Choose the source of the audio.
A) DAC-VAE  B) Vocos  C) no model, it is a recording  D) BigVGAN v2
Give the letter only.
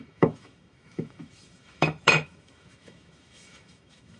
A